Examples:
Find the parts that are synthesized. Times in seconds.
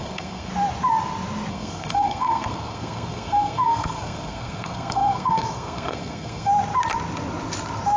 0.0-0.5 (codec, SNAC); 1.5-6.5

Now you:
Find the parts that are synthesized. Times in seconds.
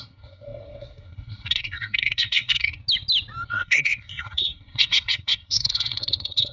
0.0-2.8 (codec, SNAC); 3.5-6.5